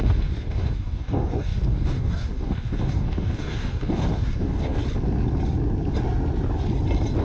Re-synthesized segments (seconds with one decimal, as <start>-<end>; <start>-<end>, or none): 0.0-4.8